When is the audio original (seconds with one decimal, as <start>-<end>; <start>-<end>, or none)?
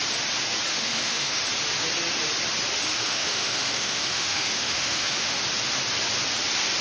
0.0-0.7; 1.4-2.9; 5.4-6.8